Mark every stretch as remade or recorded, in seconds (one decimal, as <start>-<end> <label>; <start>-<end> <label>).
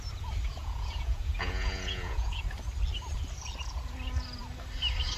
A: 0.0-0.6 recorded; 0.6-2.4 remade; 2.4-5.2 recorded